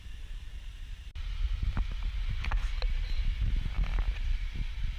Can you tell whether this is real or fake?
real